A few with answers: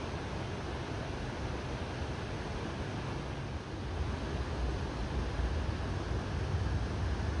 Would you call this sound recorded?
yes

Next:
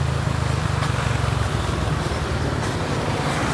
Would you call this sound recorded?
yes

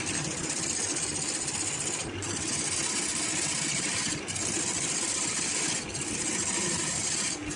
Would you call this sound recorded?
yes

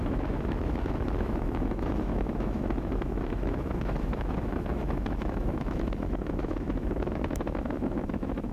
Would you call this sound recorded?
no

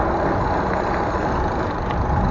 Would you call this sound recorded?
yes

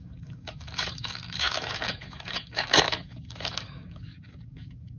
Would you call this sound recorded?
no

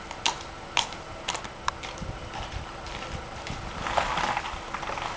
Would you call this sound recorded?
yes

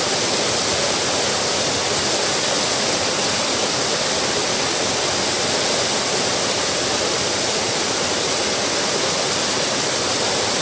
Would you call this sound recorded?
yes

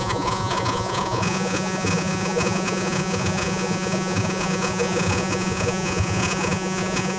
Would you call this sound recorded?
no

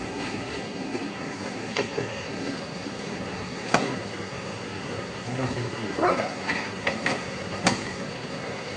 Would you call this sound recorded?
no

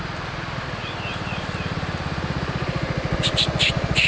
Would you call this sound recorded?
yes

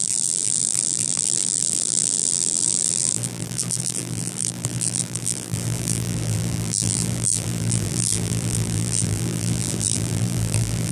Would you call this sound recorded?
no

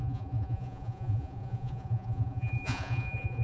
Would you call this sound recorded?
no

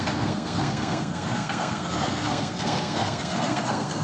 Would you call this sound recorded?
no